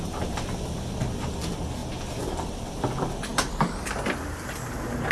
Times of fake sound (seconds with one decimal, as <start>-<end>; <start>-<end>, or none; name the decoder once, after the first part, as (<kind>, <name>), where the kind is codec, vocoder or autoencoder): none